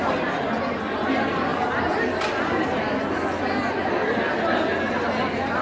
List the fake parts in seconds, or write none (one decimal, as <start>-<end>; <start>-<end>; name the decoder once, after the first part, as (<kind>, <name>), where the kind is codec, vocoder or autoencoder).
none